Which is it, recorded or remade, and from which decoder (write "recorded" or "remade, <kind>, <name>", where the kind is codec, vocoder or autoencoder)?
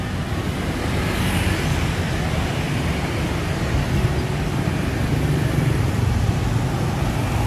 recorded